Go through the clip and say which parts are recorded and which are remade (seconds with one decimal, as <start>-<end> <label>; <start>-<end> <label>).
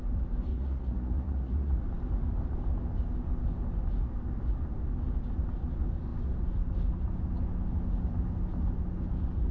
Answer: 0.0-0.5 recorded; 0.5-1.8 remade; 1.8-9.5 recorded